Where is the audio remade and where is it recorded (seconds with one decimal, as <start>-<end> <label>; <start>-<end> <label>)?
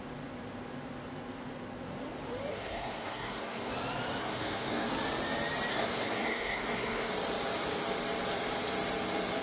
0.0-2.5 recorded; 2.5-3.7 remade; 3.7-4.2 recorded; 4.2-4.9 remade; 4.9-5.7 recorded; 5.7-7.1 remade; 7.1-9.4 recorded